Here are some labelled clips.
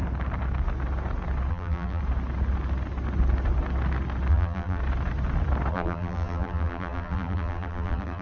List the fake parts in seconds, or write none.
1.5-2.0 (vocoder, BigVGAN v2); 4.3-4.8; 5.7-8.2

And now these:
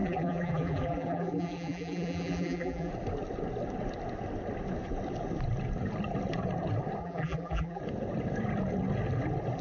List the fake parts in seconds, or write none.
0.0-2.9 (vocoder, BigVGAN v2); 7.0-7.8